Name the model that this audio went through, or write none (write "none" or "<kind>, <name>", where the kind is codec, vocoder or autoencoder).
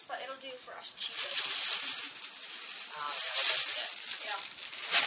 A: none